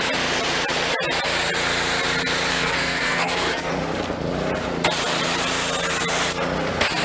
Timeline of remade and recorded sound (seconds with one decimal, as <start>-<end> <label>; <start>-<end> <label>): 0.0-2.5 recorded; 2.5-3.7 remade; 3.7-7.0 recorded